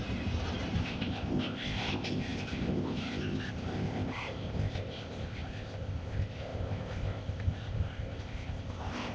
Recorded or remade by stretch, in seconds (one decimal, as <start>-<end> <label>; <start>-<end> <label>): 0.0-0.8 recorded; 0.8-9.1 remade